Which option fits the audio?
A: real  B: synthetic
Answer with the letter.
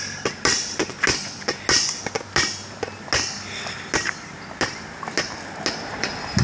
A